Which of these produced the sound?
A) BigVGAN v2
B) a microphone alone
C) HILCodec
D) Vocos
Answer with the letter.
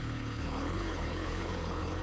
C